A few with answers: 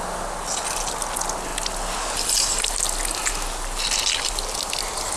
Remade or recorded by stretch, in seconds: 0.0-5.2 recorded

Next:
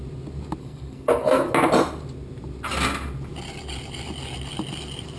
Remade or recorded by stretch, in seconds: 0.0-0.6 recorded; 0.6-1.5 remade; 1.5-5.2 recorded

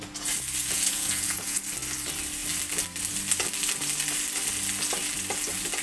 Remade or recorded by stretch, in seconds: 0.0-0.6 recorded; 0.6-1.6 remade; 1.6-5.8 recorded